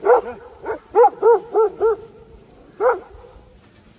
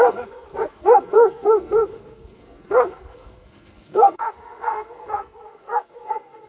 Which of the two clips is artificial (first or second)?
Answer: second